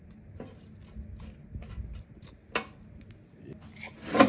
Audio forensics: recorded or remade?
recorded